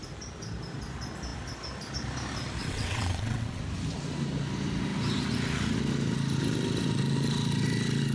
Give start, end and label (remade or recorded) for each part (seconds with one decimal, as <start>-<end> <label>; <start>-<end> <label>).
0.0-2.6 recorded; 2.6-3.6 remade; 3.6-8.1 recorded